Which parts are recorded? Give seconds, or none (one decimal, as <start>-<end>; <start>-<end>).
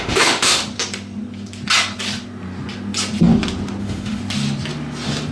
0.6-3.8; 4.2-5.3